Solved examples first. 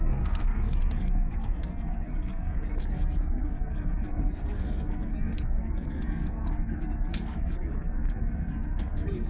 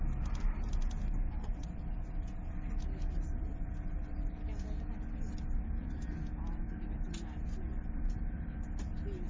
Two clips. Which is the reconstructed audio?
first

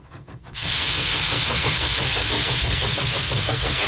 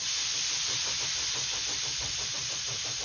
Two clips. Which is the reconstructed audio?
first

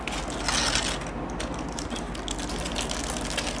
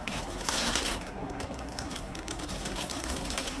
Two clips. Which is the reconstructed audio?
second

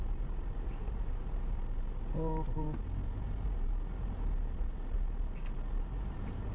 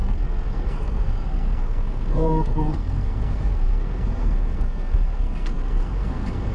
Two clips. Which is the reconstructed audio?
second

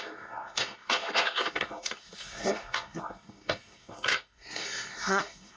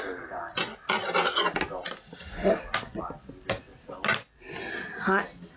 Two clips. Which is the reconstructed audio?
first